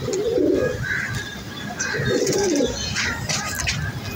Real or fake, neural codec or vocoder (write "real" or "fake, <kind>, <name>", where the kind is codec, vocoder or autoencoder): real